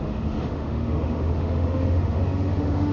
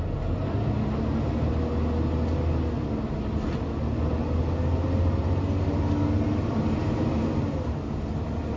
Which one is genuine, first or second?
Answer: second